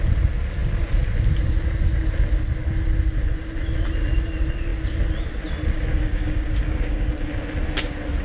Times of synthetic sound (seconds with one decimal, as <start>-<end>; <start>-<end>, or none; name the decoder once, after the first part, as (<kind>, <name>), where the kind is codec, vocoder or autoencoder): 5.9-7.1 (codec, DAC)